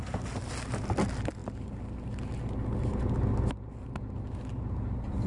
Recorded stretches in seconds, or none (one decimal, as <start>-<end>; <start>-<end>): 0.0-5.3

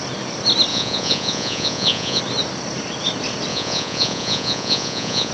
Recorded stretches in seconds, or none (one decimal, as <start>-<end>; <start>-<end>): 0.0-0.7; 2.2-3.5

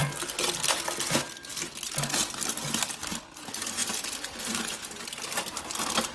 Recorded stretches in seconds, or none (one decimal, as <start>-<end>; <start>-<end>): 0.0-6.1

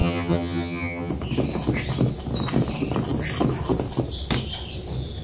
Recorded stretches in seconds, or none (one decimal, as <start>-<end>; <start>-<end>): 1.1-5.2

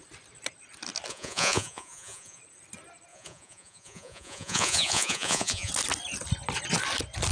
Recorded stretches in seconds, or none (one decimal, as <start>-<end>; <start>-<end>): 0.0-1.1; 2.4-3.1; 5.7-7.3

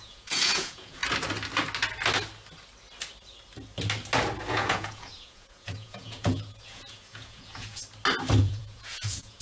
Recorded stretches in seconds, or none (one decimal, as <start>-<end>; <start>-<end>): 1.0-4.5; 7.8-8.4